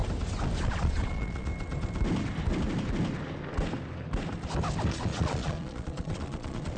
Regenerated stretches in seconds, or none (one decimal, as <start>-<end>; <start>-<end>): 0.7-1.5; 4.9-6.8

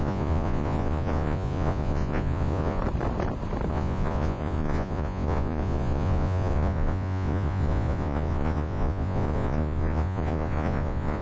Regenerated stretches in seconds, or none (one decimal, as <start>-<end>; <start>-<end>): 0.0-2.8; 3.7-11.2